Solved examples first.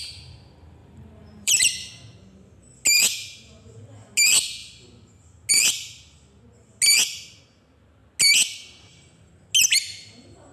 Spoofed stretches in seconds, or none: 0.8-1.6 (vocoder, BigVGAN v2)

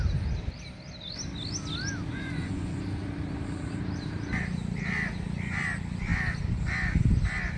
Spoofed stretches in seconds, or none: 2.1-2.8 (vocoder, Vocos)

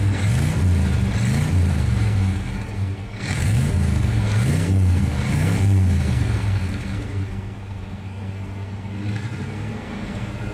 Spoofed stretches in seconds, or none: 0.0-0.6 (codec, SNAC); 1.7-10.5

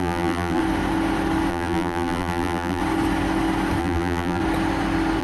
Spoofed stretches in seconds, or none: 0.0-0.6 (vocoder, BigVGAN v2); 1.5-2.8; 3.8-4.4